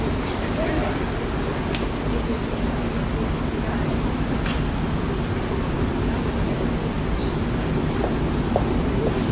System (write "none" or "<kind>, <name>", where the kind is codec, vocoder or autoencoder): none